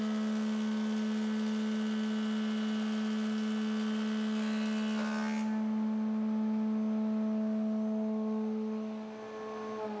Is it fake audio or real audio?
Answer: real